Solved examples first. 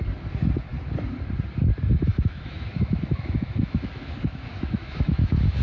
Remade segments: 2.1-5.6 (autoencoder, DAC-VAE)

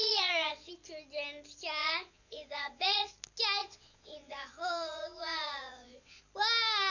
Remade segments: 0.0-0.7 (vocoder, Vocos); 1.8-3.1; 3.6-6.2

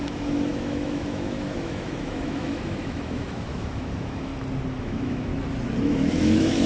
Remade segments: 0.0-4.3 (autoencoder, DAC-VAE); 4.8-5.3; 5.8-6.7

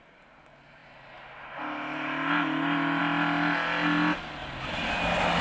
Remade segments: none

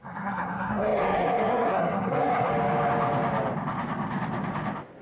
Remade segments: 0.0-2.5 (codec, SNAC)

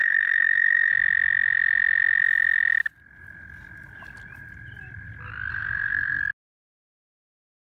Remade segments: 0.0-0.9 (codec, SNAC); 5.5-6.2